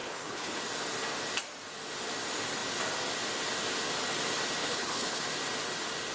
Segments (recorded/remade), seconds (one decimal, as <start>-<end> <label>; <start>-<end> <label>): 0.0-0.6 remade; 0.6-4.6 recorded; 4.6-5.2 remade; 5.2-6.1 recorded